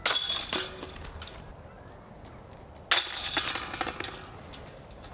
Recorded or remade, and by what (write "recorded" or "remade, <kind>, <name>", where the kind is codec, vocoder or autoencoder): recorded